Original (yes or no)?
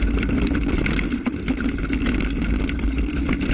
yes